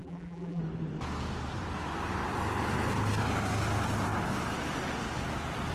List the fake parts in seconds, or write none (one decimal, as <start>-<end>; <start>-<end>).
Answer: 0.0-0.6